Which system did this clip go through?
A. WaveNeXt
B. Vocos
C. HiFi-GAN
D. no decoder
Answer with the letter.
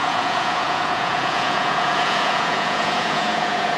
B